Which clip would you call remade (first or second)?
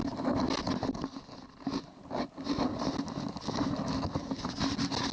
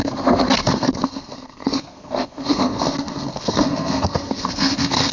second